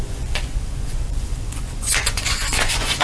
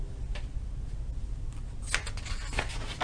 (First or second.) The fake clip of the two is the first